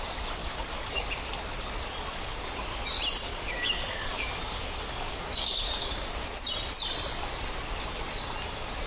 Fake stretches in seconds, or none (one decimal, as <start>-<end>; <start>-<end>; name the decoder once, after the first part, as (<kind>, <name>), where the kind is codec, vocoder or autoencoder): 0.4-1.1 (codec, DAC); 3.3-5.9